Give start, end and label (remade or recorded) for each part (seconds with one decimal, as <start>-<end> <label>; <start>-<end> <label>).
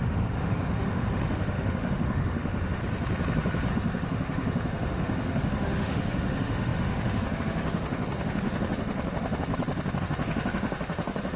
0.0-2.8 remade; 2.8-3.7 recorded; 3.7-9.5 remade; 9.5-10.0 recorded; 10.0-11.4 remade